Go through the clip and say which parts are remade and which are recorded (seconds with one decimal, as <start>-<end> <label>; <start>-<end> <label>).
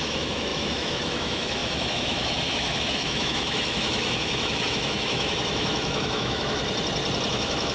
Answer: 0.0-6.6 remade; 6.6-7.3 recorded; 7.3-7.7 remade